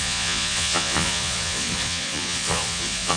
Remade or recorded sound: remade